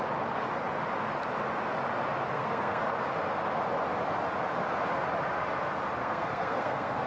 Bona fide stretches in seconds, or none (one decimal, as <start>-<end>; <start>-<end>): 0.0-2.3; 2.8-6.0